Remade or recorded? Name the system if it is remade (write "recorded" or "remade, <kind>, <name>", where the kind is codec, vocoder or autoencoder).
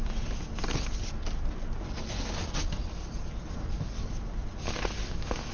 recorded